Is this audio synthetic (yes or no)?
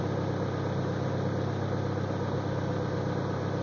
no